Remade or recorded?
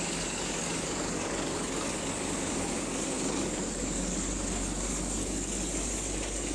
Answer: remade